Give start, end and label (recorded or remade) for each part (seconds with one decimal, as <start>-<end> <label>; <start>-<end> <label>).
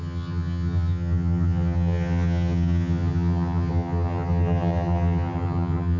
0.0-6.0 remade